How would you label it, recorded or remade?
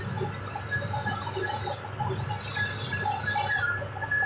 recorded